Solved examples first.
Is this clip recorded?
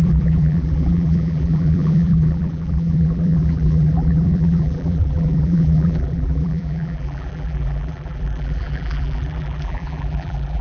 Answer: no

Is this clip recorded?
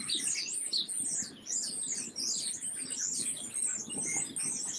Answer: yes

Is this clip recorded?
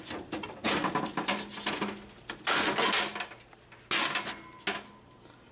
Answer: yes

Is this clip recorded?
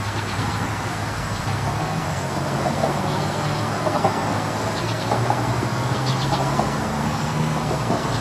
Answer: no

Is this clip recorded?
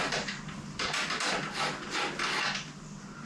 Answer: yes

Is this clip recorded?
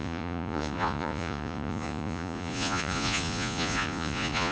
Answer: no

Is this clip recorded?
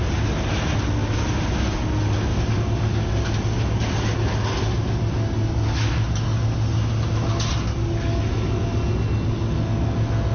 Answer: yes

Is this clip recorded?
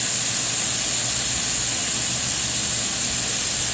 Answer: yes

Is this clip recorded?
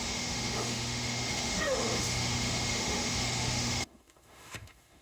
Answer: no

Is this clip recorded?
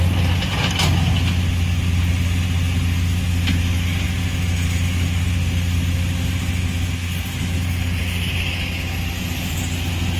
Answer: yes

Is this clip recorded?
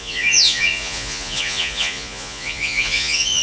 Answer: no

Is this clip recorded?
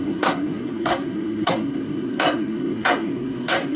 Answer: no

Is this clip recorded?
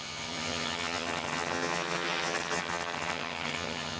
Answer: no